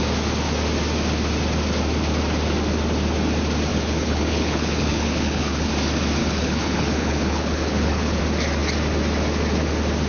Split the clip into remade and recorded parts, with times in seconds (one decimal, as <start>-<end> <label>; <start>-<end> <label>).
0.0-3.7 recorded; 3.7-5.7 remade; 5.7-6.2 recorded; 6.2-8.2 remade; 8.2-10.1 recorded